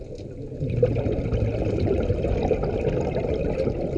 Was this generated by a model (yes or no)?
no